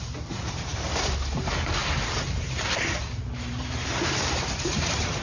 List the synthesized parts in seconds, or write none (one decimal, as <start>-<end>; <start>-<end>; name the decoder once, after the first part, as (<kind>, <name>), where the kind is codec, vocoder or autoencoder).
1.8-5.2 (vocoder, BigVGAN v2)